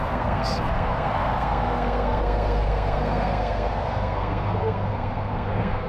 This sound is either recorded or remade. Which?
remade